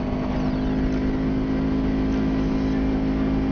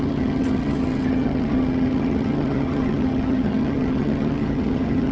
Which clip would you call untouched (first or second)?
first